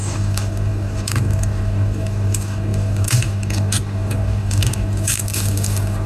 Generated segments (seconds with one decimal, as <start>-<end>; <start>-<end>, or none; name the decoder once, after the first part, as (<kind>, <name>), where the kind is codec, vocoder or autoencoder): 0.0-6.1 (codec, DAC)